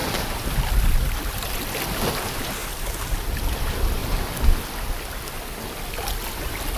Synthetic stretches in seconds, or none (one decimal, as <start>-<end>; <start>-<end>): 0.0-1.8